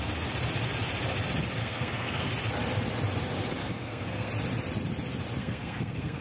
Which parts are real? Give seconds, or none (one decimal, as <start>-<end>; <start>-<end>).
0.0-1.6; 2.3-3.6; 4.3-5.4

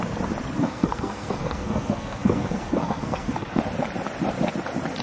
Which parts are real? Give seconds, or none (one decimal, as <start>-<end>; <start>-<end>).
0.0-0.6; 3.6-5.0